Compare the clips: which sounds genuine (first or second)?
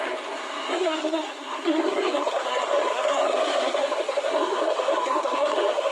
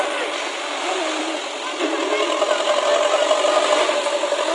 second